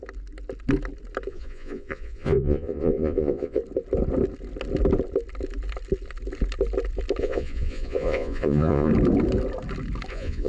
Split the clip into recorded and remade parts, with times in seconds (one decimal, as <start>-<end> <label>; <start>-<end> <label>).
0.0-1.3 recorded; 1.3-3.6 remade; 3.6-7.2 recorded; 7.2-8.9 remade; 8.9-10.1 recorded; 10.1-10.5 remade